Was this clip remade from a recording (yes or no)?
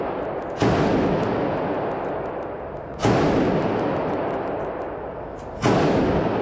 no